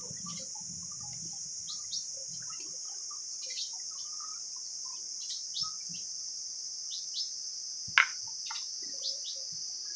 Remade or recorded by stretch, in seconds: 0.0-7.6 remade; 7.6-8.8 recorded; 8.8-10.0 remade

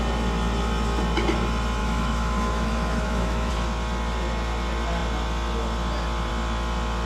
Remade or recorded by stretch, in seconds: 0.0-1.8 recorded; 1.8-3.5 remade; 3.5-7.1 recorded

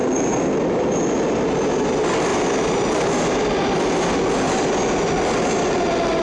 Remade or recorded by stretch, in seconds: 0.0-6.2 recorded

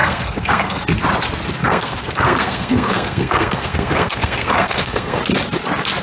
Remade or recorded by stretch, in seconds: 0.0-0.8 remade; 0.8-1.6 recorded; 1.6-5.2 remade; 5.2-6.0 recorded

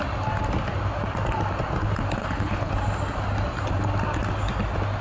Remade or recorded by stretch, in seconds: 0.0-2.2 recorded; 2.2-2.7 remade; 2.7-5.0 recorded

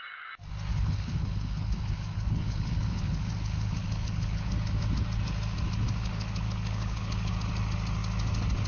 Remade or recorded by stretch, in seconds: 0.0-0.7 recorded; 0.7-4.5 remade; 4.5-6.0 recorded; 6.0-7.3 remade; 7.3-8.7 recorded

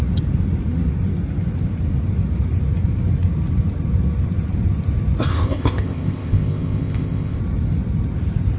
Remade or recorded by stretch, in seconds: 0.0-5.3 recorded; 5.3-7.4 remade; 7.4-8.6 recorded

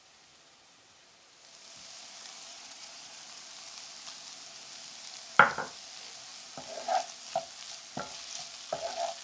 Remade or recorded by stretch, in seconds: 0.0-2.5 recorded; 2.5-3.2 remade; 3.2-9.2 recorded